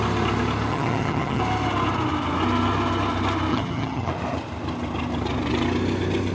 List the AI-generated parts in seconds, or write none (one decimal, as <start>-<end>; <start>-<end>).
0.7-1.4; 3.5-4.1